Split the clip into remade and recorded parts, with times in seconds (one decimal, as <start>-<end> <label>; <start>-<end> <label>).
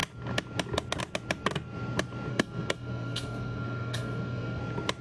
0.0-2.3 recorded; 2.3-4.6 remade; 4.6-5.0 recorded